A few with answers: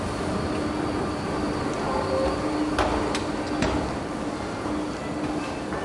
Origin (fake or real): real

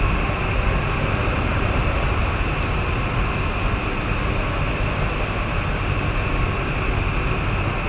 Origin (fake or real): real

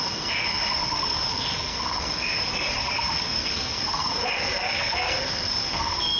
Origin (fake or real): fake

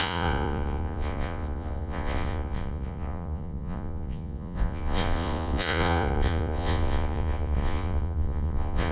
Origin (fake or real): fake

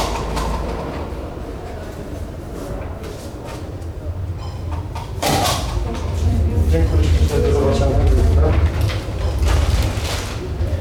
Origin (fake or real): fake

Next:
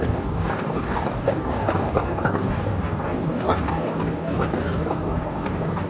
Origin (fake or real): fake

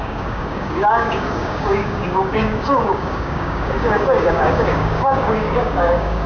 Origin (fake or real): fake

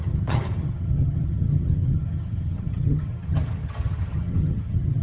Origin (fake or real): fake